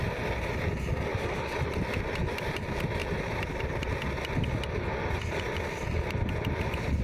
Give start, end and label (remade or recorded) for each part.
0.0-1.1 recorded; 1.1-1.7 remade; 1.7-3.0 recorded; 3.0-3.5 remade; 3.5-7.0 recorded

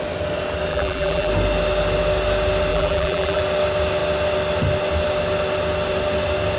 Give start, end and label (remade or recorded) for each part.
0.0-0.7 recorded; 0.7-1.3 remade; 1.3-2.7 recorded; 2.7-3.4 remade; 3.4-6.6 recorded